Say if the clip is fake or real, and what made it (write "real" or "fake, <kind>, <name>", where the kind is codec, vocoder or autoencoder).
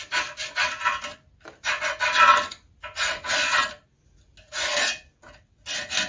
real